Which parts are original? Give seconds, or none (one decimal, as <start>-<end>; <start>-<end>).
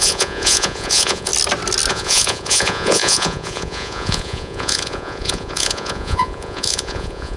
1.3-1.9